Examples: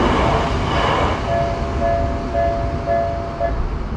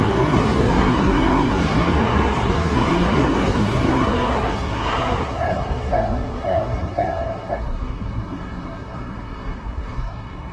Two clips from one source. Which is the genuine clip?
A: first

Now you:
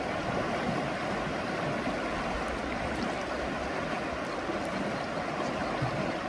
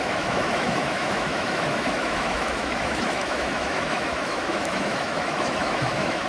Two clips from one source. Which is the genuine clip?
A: first